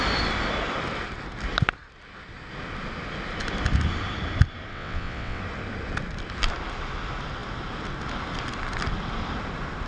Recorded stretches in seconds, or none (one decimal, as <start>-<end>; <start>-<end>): 0.0-4.7; 5.4-9.9